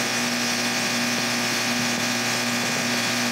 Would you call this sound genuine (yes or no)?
no